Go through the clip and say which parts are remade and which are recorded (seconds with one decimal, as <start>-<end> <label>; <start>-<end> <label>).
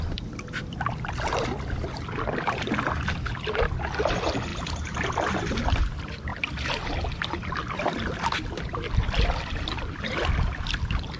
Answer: 0.0-4.5 recorded; 4.5-5.5 remade; 5.5-11.2 recorded